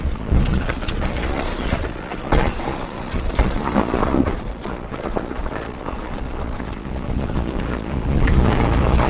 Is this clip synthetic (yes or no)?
yes